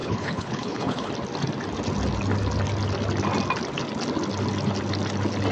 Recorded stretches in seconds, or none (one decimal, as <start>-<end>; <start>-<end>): 1.1-5.5